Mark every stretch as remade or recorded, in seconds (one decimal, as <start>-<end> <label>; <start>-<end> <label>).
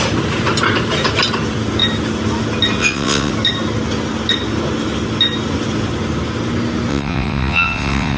0.0-2.8 recorded; 2.8-3.3 remade; 3.3-6.9 recorded; 6.9-8.2 remade